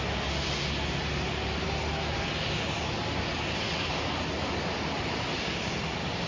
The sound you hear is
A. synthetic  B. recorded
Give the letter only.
B